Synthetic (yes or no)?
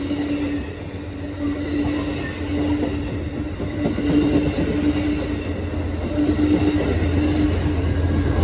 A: no